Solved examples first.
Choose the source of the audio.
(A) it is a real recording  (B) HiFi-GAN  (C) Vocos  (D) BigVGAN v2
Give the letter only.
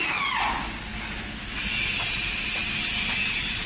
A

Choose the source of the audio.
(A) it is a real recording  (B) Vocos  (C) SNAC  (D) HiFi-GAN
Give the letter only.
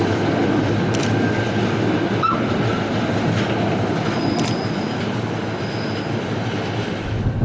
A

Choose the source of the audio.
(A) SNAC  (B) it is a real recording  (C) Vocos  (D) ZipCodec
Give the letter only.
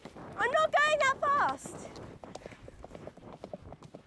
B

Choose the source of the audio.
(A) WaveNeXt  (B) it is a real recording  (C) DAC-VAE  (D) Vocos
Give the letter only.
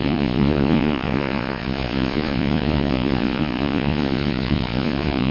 D